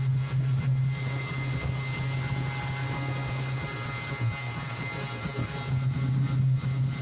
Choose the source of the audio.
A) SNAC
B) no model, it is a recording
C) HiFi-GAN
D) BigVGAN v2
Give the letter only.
B